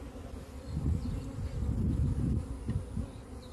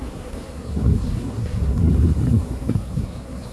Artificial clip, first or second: second